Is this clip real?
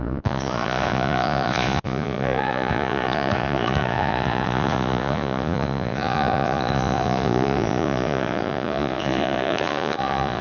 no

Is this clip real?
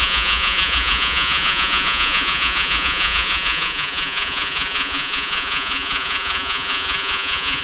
no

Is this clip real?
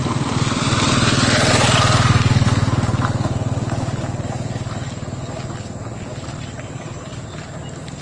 yes